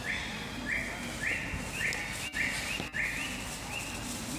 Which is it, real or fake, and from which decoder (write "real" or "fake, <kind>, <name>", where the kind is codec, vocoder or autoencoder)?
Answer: real